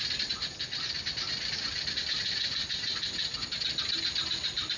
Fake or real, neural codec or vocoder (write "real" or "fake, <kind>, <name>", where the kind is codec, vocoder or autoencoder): real